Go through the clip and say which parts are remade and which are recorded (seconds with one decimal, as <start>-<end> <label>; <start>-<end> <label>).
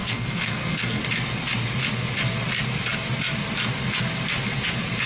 0.0-1.0 remade; 1.0-5.1 recorded